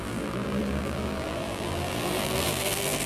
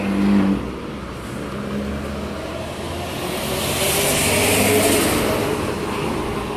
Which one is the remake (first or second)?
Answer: first